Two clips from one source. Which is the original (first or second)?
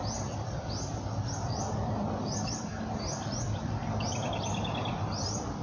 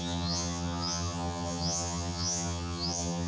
first